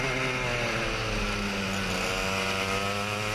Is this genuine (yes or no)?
yes